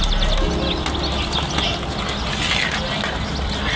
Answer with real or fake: real